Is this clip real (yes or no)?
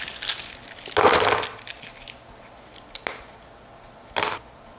yes